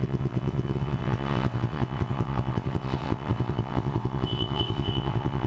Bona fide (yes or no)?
no